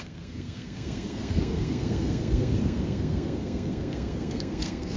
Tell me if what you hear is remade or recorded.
remade